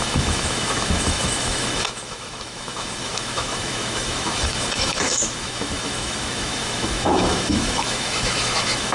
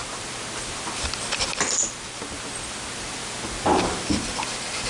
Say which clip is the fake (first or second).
first